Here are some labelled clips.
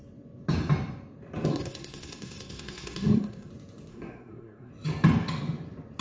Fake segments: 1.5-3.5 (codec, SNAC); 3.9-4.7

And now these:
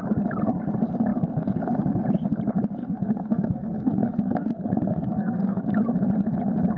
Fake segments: 2.8-5.6 (codec, SNAC)

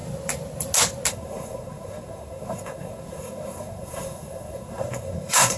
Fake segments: 1.1-5.6 (codec, SNAC)

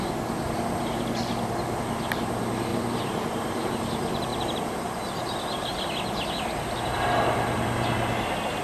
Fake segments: none

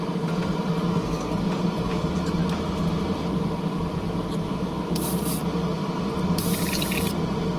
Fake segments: 0.9-1.4 (codec, SNAC)

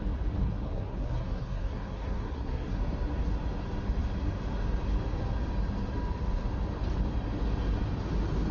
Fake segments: 0.4-2.8 (codec, SNAC)